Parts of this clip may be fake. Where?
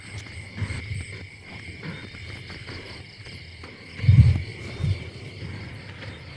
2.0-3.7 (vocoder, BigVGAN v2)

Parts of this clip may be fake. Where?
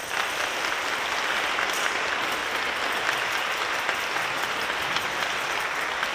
0.0-2.4 (vocoder, BigVGAN v2)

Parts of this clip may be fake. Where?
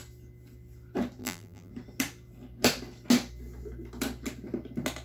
1.2-1.7 (vocoder, BigVGAN v2)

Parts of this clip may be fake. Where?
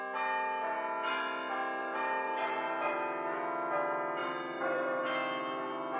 1.8-2.9 (vocoder, BigVGAN v2); 4.2-5.0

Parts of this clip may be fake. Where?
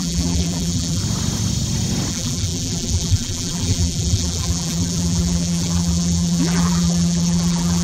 0.0-1.0 (vocoder, BigVGAN v2); 2.1-7.8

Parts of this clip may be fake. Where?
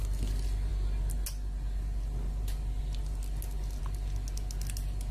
none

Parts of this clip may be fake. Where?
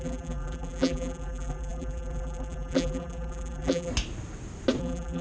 0.0-3.9 (vocoder, BigVGAN v2); 4.8-5.2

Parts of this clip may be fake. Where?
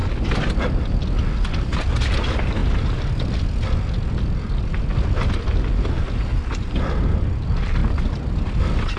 7.8-8.6 (vocoder, BigVGAN v2)